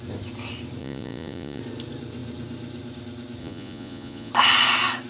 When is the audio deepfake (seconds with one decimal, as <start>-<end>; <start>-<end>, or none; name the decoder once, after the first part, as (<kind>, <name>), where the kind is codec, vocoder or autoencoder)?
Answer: 0.8-1.6 (vocoder, Vocos); 3.4-4.3